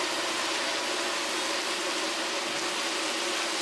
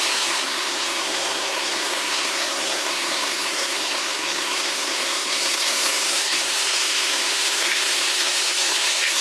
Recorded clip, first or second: first